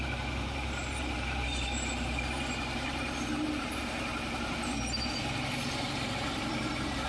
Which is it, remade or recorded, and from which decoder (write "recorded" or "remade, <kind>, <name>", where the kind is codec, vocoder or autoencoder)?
remade, vocoder, BigVGAN v2